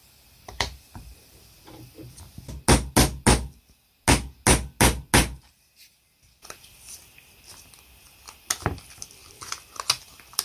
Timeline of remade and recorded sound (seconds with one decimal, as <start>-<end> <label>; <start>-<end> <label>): 0.0-1.4 remade; 1.4-5.2 recorded; 5.2-6.1 remade; 6.1-10.4 recorded

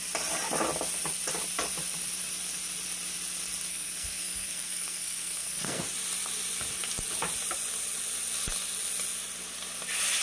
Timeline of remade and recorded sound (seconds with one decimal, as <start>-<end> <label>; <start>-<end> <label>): 0.0-3.7 recorded; 3.7-5.8 remade; 5.8-10.2 recorded